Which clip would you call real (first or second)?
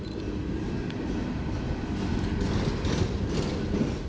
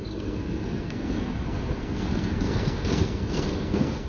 first